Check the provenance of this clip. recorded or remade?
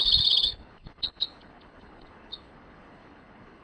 remade